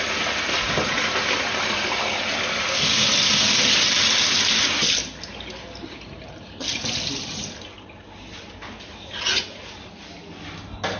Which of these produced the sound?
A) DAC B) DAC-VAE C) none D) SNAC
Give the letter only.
C